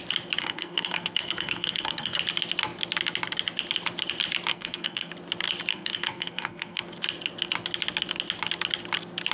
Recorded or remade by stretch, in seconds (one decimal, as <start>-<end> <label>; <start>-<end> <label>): 0.0-0.4 recorded; 0.4-2.2 remade; 2.2-4.5 recorded; 4.5-5.1 remade; 5.1-5.7 recorded; 5.7-6.8 remade; 6.8-9.3 recorded